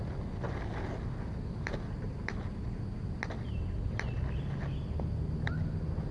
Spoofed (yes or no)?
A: no